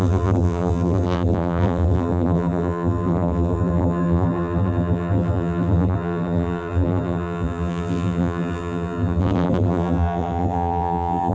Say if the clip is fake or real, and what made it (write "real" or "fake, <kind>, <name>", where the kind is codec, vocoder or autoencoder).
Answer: fake, vocoder, BigVGAN v2